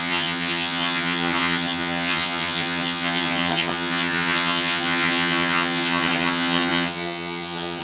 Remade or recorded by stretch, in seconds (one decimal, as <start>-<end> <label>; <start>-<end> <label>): 0.0-7.8 remade